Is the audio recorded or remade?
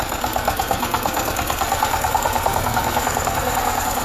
remade